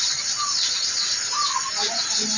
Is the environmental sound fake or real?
real